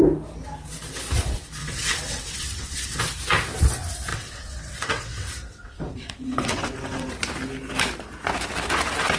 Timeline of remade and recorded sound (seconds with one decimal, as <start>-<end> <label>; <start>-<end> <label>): 0.0-1.6 recorded; 1.6-3.0 remade; 3.0-4.1 recorded; 4.1-7.1 remade; 7.1-9.2 recorded